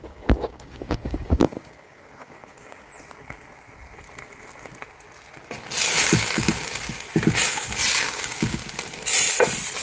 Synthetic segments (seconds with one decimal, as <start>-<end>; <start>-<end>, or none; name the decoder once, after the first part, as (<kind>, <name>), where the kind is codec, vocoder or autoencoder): 0.0-2.9 (codec, DAC); 8.0-8.6